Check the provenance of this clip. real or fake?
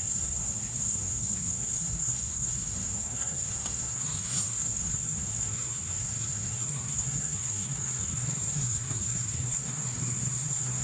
fake